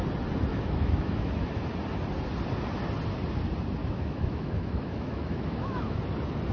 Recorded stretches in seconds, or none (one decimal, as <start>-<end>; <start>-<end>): 0.0-0.5; 1.5-3.8; 6.0-6.5